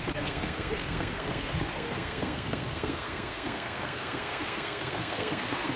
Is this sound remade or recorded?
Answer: remade